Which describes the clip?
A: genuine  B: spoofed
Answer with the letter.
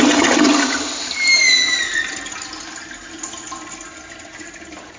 A